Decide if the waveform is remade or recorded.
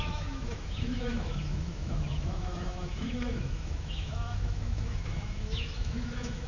remade